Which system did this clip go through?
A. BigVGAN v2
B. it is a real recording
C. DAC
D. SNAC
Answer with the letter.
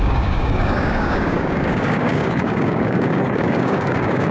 C